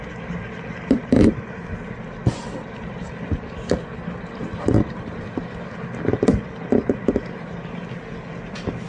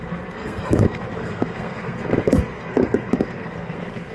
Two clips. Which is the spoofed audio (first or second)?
second